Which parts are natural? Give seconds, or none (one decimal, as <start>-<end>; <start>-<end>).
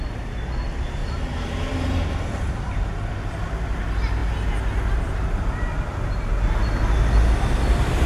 0.0-1.0; 3.1-8.1